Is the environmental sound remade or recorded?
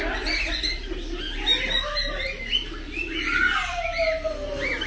recorded